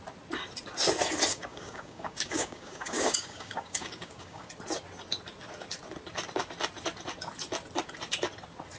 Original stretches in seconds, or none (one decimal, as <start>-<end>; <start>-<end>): 0.0-1.3; 4.5-8.8